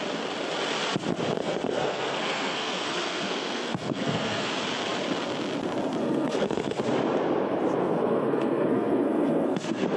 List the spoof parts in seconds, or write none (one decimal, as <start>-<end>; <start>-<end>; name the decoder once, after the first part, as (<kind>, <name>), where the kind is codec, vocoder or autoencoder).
1.4-4.5 (codec, SNAC); 6.0-6.8; 7.8-10.0